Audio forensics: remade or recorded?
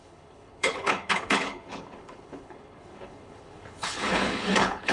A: remade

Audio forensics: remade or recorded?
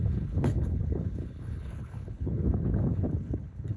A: remade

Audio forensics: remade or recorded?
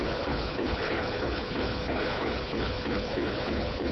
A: remade